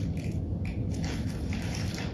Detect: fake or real real